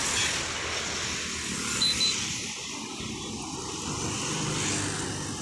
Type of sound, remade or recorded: recorded